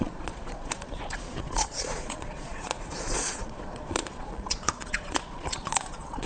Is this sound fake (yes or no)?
yes